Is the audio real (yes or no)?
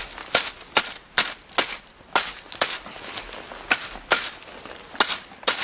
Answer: yes